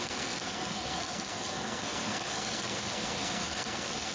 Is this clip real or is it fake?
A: fake